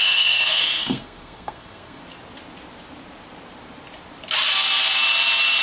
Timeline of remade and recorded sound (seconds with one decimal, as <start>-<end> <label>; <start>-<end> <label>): 0.0-2.0 remade; 2.0-5.6 recorded